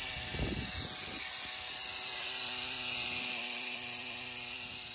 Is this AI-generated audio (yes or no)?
no